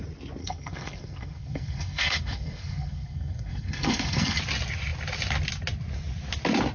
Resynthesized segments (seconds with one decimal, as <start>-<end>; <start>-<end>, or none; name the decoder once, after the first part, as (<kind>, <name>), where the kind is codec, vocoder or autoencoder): 0.4-4.4 (codec, SNAC)